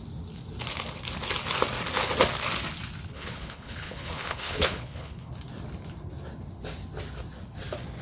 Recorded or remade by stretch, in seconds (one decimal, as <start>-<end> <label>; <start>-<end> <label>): 0.0-3.1 recorded; 3.1-5.3 remade; 5.3-8.0 recorded